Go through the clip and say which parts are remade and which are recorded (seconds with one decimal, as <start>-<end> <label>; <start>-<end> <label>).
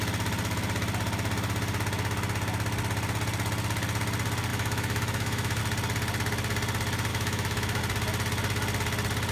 0.0-4.5 recorded; 4.5-5.6 remade; 5.6-7.1 recorded; 7.1-7.8 remade; 7.8-9.3 recorded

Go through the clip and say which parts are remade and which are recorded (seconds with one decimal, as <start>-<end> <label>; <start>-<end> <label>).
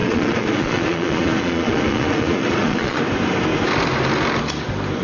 0.0-3.0 remade; 3.0-5.0 recorded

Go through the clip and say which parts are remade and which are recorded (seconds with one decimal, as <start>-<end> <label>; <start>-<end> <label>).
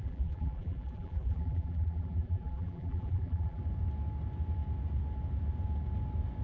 0.0-3.6 remade; 3.6-6.4 recorded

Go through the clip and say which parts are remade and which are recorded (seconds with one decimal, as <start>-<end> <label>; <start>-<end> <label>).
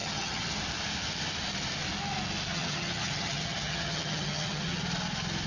0.0-0.6 remade; 0.6-2.5 recorded; 2.5-4.8 remade; 4.8-5.5 recorded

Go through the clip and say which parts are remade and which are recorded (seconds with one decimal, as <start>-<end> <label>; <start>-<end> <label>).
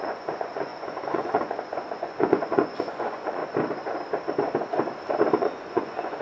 0.0-3.4 remade; 3.4-5.4 recorded; 5.4-6.2 remade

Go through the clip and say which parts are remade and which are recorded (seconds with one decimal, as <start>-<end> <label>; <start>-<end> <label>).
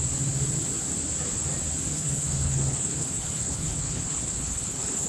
0.0-1.9 recorded; 1.9-5.1 remade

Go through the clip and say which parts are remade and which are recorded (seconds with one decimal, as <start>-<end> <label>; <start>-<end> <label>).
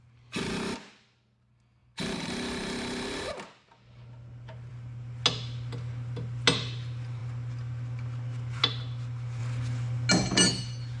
0.0-11.0 recorded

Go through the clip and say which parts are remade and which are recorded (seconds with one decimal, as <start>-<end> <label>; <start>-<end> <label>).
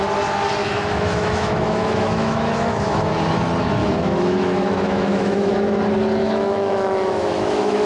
0.0-0.6 recorded; 0.6-3.1 remade; 3.1-3.8 recorded; 3.8-5.5 remade; 5.5-6.2 recorded; 6.2-7.9 remade